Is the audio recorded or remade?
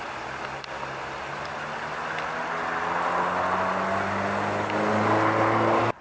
recorded